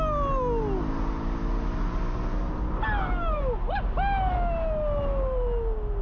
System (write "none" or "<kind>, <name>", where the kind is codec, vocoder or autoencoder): none